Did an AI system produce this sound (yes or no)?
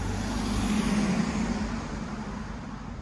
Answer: no